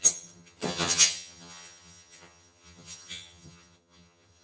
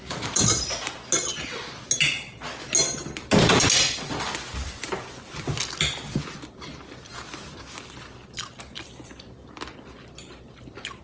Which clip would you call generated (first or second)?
first